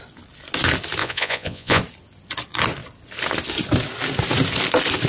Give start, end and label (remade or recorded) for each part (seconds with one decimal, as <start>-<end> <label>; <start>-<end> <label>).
0.0-1.0 recorded; 1.0-1.8 remade; 1.8-5.1 recorded

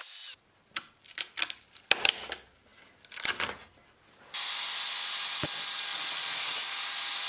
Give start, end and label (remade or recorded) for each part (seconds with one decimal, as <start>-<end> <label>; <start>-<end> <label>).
0.0-5.9 recorded; 5.9-6.5 remade; 6.5-7.3 recorded

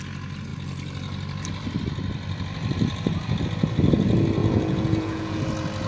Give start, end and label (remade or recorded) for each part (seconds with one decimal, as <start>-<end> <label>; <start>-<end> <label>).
0.0-4.4 recorded; 4.4-5.4 remade; 5.4-5.9 recorded

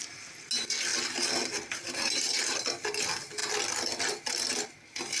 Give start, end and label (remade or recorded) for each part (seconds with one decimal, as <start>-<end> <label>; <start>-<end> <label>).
0.0-5.2 recorded

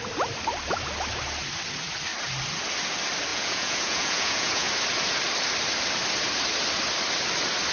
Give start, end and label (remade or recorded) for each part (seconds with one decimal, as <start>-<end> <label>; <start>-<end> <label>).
0.0-3.3 recorded; 3.3-4.7 remade; 4.7-7.7 recorded

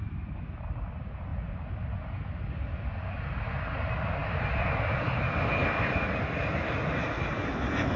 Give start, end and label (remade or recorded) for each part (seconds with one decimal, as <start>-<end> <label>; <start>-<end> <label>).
0.0-8.0 recorded